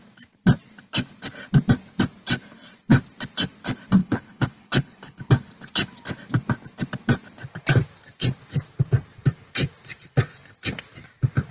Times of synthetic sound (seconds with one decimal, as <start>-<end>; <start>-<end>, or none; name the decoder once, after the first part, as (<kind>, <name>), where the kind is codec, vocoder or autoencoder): 4.0-5.3 (codec, HILCodec)